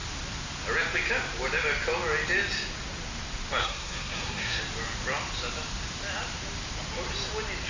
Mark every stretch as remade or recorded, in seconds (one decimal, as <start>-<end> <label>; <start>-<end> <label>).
0.0-3.6 recorded; 3.6-4.6 remade; 4.6-7.7 recorded